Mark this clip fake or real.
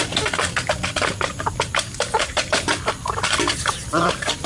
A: real